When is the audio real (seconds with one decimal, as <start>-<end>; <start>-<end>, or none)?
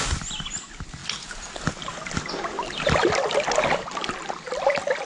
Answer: 0.0-5.1